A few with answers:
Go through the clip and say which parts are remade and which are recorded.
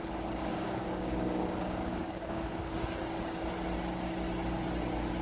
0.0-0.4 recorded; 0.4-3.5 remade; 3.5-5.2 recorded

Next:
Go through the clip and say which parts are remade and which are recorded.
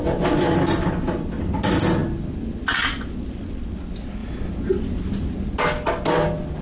0.0-6.6 recorded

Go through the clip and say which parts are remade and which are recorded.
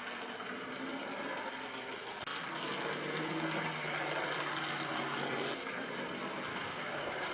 0.0-6.5 recorded; 6.5-7.3 remade